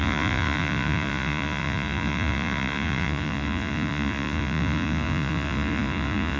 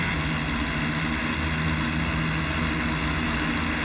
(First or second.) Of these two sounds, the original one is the second